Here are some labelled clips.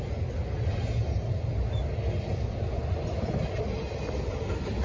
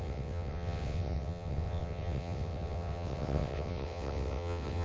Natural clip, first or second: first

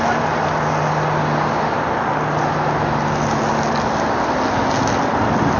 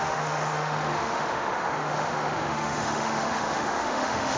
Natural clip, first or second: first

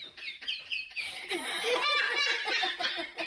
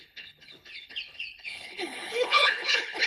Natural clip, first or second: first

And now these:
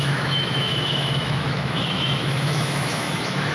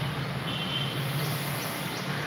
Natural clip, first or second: second